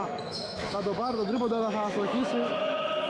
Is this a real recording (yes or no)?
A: no